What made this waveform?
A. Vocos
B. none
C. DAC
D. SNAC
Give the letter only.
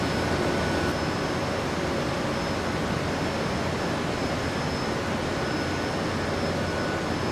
B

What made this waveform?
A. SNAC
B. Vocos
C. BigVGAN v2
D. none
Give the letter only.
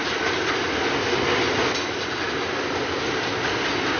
D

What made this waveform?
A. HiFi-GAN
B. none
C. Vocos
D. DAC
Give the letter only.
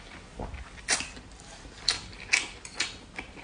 B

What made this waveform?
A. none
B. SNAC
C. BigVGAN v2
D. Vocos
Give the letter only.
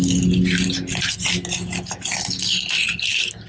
A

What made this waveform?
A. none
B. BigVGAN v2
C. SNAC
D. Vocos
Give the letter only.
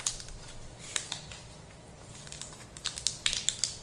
A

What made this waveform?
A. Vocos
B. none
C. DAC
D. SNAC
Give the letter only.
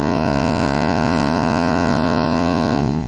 A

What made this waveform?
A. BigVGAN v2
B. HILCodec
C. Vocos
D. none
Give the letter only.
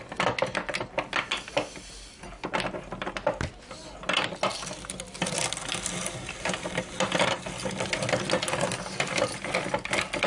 D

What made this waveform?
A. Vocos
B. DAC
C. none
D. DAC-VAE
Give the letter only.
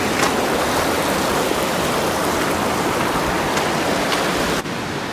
C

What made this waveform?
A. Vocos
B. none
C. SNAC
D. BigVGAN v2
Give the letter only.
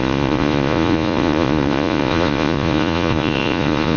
A